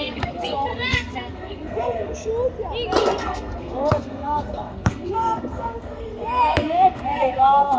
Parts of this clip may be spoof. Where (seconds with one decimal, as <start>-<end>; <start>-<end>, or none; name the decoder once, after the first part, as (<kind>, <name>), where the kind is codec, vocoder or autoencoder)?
0.0-2.3 (codec, SNAC); 3.0-7.8